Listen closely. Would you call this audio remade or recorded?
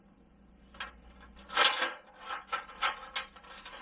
recorded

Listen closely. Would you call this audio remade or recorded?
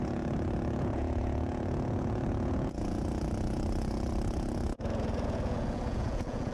remade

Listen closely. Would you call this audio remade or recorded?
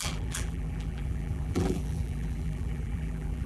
remade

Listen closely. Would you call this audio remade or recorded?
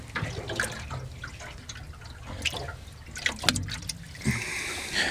recorded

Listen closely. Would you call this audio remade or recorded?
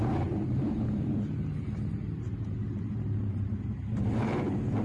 remade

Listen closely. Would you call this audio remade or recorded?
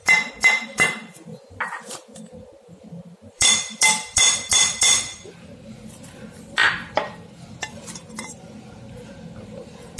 remade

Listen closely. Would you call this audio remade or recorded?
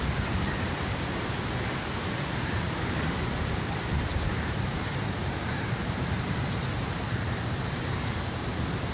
remade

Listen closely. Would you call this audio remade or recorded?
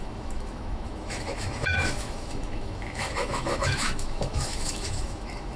remade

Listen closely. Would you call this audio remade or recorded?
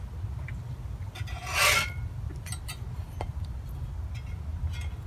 recorded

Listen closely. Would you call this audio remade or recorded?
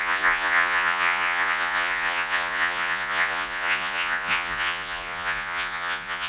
remade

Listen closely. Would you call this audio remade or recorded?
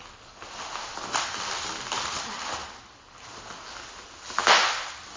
recorded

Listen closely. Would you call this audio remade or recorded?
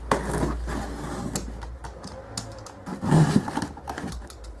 recorded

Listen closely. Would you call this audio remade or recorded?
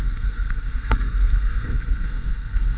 remade